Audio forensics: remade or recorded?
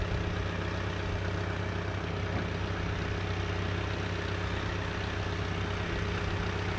recorded